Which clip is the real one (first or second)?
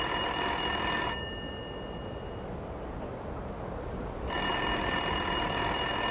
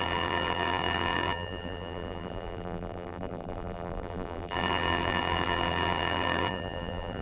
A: first